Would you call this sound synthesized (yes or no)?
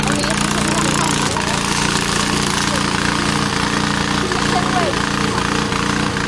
no